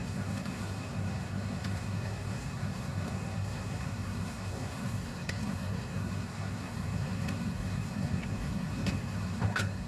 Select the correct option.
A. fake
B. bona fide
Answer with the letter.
A